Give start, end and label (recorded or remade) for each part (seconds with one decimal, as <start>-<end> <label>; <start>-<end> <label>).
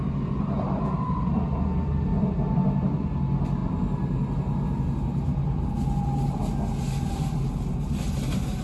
0.0-8.6 recorded